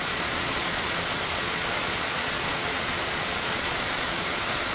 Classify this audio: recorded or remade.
remade